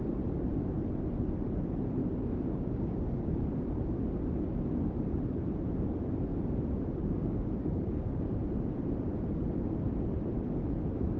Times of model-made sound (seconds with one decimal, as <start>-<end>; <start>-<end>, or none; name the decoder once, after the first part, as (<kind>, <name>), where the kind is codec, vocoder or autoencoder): 2.0-3.5 (codec, DAC); 7.0-8.4